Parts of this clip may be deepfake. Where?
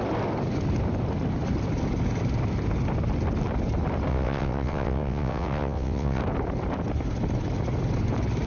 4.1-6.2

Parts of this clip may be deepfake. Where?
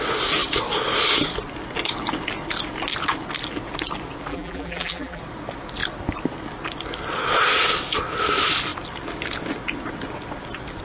4.3-5.2